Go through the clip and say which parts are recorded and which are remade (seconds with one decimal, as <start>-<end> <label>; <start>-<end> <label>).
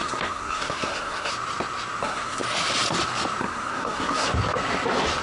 0.0-1.3 remade; 1.3-2.0 recorded; 2.0-2.4 remade; 2.4-3.4 recorded; 3.4-4.3 remade; 4.3-5.2 recorded